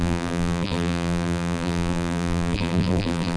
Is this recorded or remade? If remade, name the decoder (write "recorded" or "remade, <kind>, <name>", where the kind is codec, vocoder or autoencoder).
remade, vocoder, BigVGAN v2